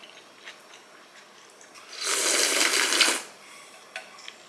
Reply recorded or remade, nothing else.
recorded